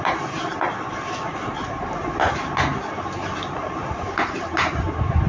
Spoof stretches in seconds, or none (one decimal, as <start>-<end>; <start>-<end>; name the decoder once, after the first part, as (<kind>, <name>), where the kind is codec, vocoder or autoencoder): none

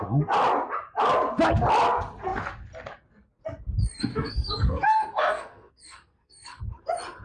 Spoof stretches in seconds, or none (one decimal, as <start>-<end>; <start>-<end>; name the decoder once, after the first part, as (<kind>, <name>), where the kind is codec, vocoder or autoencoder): 4.1-6.6 (codec, SNAC)

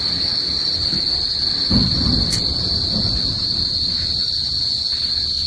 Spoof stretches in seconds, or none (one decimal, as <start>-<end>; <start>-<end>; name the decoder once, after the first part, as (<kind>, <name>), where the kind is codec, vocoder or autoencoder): none